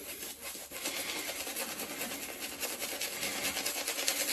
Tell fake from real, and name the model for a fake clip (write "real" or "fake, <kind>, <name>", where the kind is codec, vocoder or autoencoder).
real